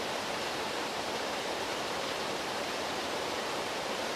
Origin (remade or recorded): remade